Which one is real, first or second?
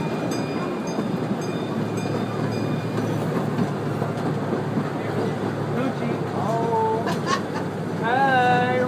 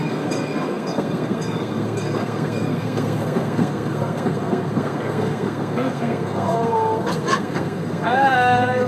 first